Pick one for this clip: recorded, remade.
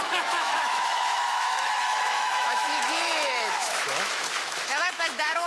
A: remade